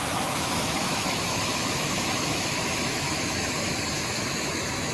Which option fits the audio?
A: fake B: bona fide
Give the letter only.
A